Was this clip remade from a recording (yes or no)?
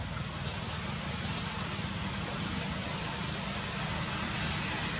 no